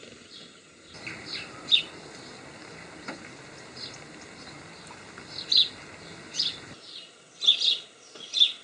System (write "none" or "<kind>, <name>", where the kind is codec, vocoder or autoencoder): none